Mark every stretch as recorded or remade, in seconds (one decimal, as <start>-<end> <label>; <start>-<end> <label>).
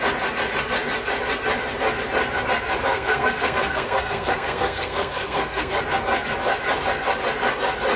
0.0-2.9 recorded; 2.9-5.8 remade; 5.8-8.0 recorded